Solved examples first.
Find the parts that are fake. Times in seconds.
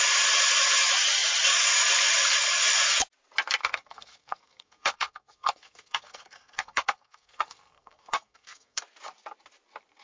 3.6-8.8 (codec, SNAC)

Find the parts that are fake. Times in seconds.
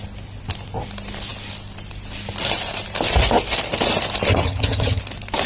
4.3-5.0 (vocoder, HiFi-GAN)